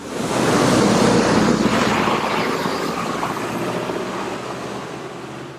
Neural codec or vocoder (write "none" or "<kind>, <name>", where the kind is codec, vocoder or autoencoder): none